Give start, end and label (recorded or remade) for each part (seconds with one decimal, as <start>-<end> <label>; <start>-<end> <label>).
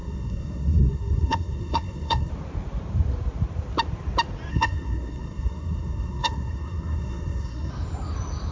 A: 0.0-2.3 remade; 2.3-4.5 recorded; 4.5-7.7 remade; 7.7-8.5 recorded